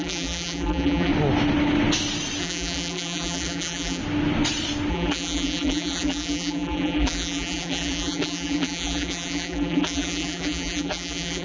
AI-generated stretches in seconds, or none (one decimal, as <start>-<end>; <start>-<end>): 0.0-1.1; 2.4-4.0; 4.9-11.4